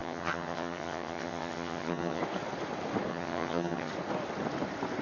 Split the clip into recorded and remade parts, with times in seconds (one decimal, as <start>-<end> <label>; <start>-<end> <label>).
0.0-2.2 remade; 2.2-3.1 recorded; 3.1-3.9 remade; 3.9-5.0 recorded